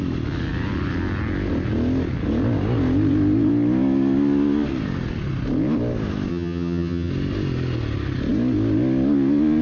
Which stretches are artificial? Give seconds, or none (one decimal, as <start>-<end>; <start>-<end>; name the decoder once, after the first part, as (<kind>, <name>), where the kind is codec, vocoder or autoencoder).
6.3-7.1 (vocoder, HiFi-GAN)